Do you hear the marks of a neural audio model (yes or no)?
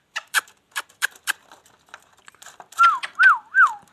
yes